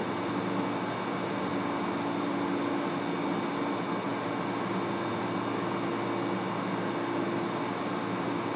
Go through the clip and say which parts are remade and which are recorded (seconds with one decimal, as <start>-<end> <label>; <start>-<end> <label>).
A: 0.0-8.6 recorded

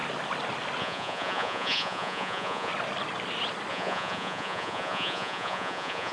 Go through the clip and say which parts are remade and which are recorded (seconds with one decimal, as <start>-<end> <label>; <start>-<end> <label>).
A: 0.0-0.8 recorded; 0.8-2.7 remade; 2.7-3.7 recorded; 3.7-6.1 remade

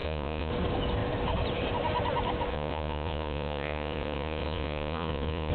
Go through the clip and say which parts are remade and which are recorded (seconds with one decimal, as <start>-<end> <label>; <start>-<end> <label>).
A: 0.0-0.5 remade; 0.5-2.5 recorded; 2.5-5.5 remade